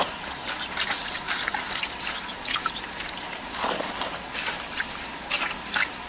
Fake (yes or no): no